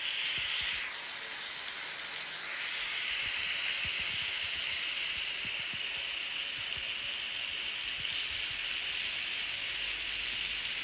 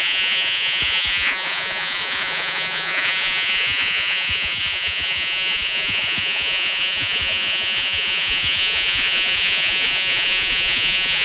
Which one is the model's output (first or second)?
second